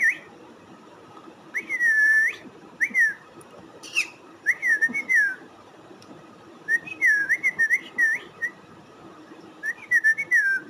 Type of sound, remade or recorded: remade